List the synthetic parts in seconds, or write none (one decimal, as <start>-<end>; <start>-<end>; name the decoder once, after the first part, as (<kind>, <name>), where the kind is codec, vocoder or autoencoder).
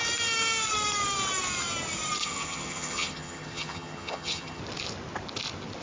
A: 2.2-4.6 (vocoder, HiFi-GAN)